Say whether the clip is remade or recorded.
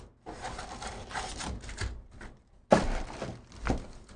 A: recorded